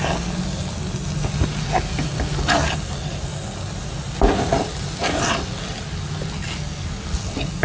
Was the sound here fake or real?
real